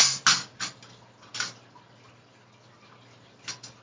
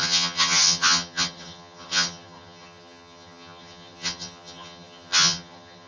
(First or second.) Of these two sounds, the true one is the first